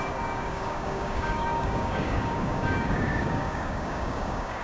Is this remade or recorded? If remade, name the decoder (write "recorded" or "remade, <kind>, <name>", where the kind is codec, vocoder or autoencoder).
remade, codec, DAC